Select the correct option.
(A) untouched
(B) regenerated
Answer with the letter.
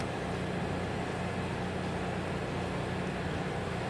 A